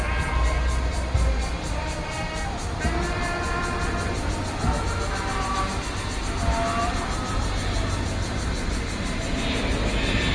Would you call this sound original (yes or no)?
yes